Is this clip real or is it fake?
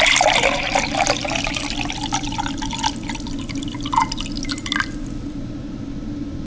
real